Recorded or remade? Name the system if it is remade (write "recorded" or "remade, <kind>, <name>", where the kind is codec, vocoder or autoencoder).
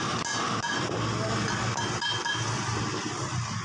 recorded